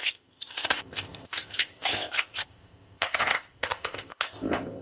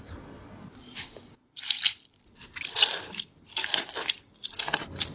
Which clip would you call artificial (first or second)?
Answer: first